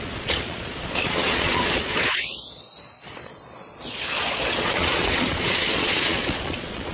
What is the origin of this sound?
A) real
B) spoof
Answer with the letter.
B